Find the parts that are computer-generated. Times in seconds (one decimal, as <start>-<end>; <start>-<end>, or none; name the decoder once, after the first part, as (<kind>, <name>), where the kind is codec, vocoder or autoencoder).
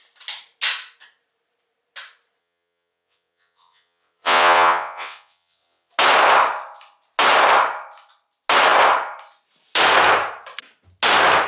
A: 2.4-5.9 (vocoder, WaveNeXt)